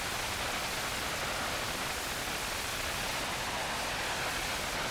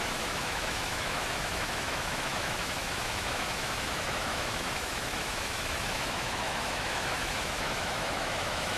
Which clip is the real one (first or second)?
first